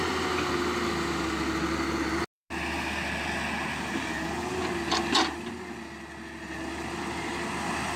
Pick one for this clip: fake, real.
real